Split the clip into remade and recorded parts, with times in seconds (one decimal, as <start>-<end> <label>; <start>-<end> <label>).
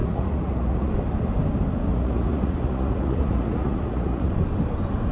0.0-0.9 remade; 0.9-1.9 recorded; 1.9-4.3 remade; 4.3-5.1 recorded